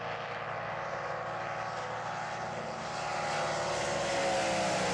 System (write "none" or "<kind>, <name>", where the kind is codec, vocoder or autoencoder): none